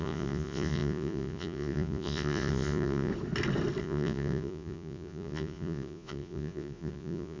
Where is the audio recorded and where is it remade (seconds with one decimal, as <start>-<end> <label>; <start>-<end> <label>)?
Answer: 0.0-3.1 remade; 3.1-3.8 recorded; 3.8-7.4 remade